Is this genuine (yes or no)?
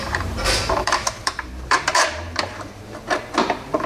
no